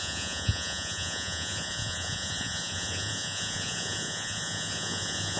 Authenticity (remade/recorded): remade